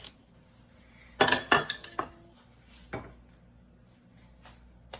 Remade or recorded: recorded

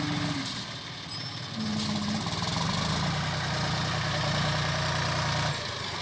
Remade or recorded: recorded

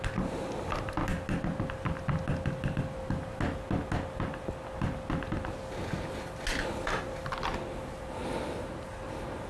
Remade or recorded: recorded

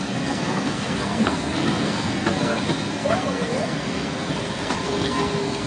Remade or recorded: remade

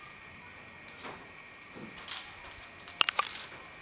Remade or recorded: recorded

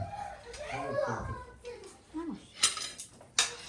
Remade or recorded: recorded